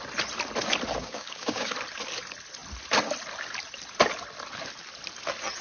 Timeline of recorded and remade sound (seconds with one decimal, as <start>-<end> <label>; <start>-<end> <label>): 0.0-1.0 recorded; 1.0-1.7 remade; 1.7-5.6 recorded